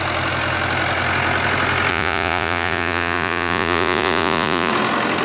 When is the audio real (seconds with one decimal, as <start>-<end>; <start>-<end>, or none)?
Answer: 0.0-1.9; 4.7-5.2

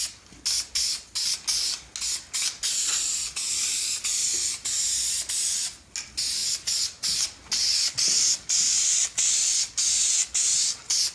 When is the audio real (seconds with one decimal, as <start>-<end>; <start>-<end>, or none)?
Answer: 0.0-11.1

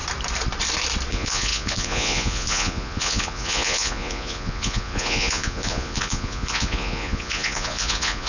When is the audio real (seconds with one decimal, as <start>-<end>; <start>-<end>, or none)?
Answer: 0.0-1.1

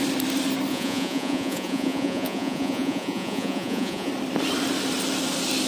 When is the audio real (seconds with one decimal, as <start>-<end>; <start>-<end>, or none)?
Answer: 0.0-0.7; 4.1-5.7

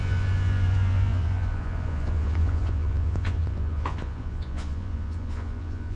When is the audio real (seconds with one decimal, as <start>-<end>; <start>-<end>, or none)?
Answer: none